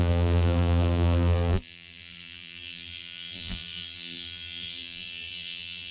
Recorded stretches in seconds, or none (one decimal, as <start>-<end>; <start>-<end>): none